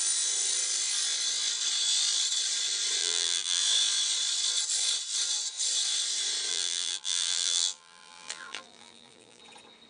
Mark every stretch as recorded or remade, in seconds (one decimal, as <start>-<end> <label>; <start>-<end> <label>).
0.0-3.0 recorded; 3.0-3.6 remade; 3.6-6.5 recorded; 6.5-9.4 remade; 9.4-9.9 recorded